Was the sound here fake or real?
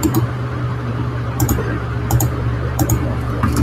fake